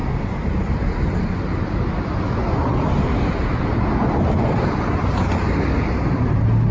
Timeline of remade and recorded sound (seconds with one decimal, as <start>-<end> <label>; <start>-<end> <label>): 0.0-6.7 recorded